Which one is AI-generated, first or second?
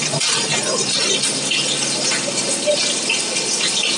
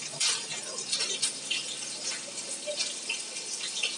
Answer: first